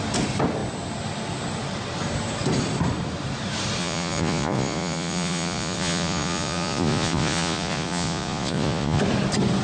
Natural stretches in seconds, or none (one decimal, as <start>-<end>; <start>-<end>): 0.0-3.8; 9.0-9.6